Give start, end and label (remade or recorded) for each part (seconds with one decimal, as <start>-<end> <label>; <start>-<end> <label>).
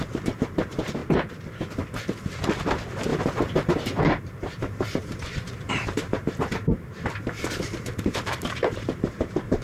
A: 0.0-1.0 remade; 1.0-2.4 recorded; 2.4-9.6 remade